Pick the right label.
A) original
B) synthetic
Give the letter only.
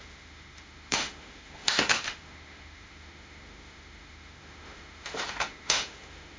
B